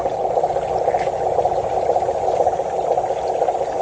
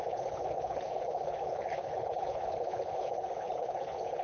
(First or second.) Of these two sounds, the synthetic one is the second